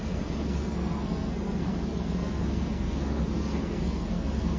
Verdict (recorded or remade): remade